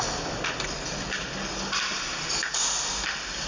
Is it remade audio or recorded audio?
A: recorded